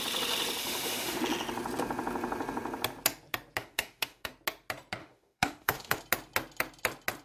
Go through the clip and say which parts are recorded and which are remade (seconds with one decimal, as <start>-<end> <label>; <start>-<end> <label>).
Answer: 0.0-0.6 recorded; 0.6-1.2 remade; 1.2-3.6 recorded; 3.6-4.3 remade; 4.3-5.0 recorded; 5.0-6.0 remade; 6.0-7.2 recorded